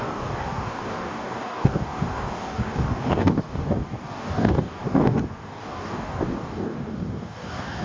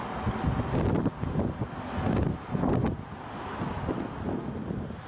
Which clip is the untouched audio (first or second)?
second